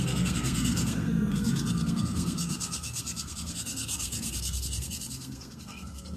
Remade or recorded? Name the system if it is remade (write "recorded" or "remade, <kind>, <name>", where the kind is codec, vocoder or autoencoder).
remade, codec, SNAC